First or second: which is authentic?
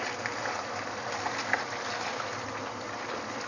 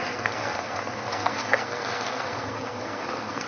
first